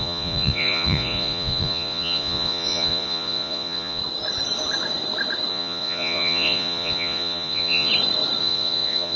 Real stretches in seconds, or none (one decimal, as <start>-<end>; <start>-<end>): 4.0-5.5; 7.9-8.4